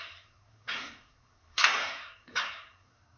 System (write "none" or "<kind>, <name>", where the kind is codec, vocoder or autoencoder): codec, SNAC